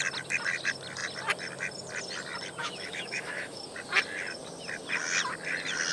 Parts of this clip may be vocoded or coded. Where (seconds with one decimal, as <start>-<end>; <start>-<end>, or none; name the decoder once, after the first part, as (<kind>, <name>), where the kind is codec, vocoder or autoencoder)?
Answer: 2.6-3.6 (autoencoder, DAC-VAE)